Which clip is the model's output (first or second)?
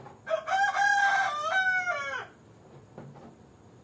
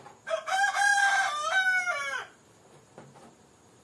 second